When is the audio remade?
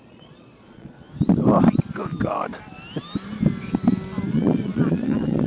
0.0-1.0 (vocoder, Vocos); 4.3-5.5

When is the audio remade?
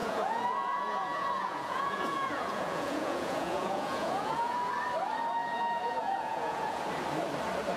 0.0-4.7 (vocoder, Vocos); 5.4-6.8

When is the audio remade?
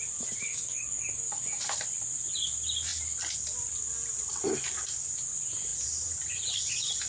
0.5-1.6 (codec, DAC)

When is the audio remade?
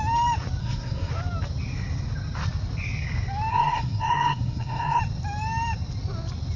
0.6-1.1 (codec, SNAC); 3.5-5.0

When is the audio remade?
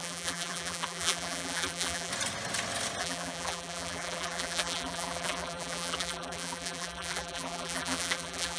0.0-2.1 (vocoder, BigVGAN v2); 3.0-8.6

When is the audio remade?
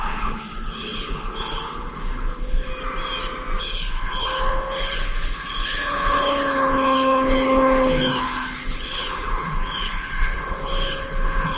0.0-2.7 (codec, HILCodec); 3.6-11.6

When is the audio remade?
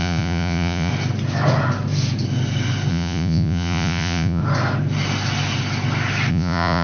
0.0-0.9 (vocoder, Vocos); 2.9-4.4; 6.3-6.8